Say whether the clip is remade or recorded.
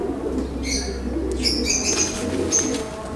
recorded